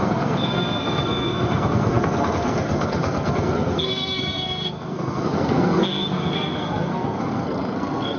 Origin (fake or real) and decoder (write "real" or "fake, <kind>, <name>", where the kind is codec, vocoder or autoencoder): fake, codec, SNAC